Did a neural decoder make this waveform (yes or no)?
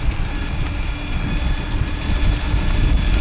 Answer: no